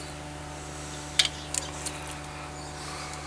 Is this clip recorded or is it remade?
recorded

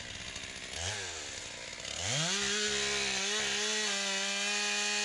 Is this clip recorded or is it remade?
recorded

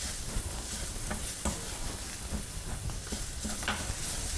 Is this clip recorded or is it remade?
recorded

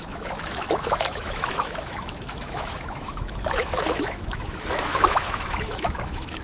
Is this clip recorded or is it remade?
remade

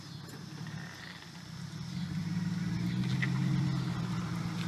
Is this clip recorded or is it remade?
recorded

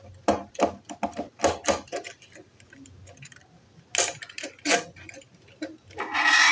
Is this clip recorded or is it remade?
recorded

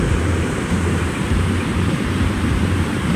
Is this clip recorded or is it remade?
remade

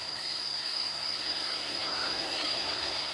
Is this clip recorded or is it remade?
remade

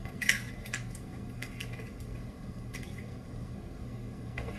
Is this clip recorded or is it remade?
remade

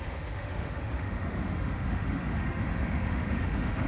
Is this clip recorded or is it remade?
remade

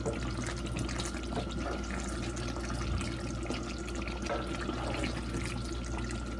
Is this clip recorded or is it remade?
recorded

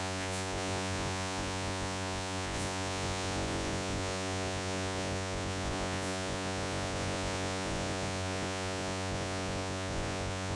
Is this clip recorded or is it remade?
remade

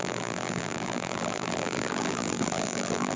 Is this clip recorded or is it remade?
remade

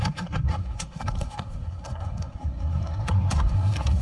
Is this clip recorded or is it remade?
remade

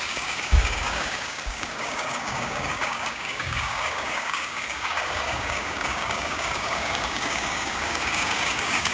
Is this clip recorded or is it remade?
remade